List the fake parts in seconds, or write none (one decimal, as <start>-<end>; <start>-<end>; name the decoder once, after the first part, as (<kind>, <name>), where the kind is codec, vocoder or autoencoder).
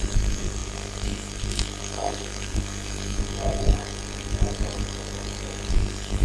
0.0-3.2 (codec, SNAC); 5.7-6.2